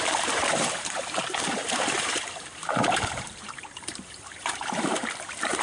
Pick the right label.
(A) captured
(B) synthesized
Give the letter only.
B